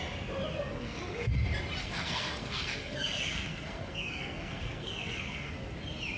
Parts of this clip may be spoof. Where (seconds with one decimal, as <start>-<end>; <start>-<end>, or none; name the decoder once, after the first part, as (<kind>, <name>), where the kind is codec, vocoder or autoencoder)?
0.7-1.3 (codec, SNAC); 1.8-5.5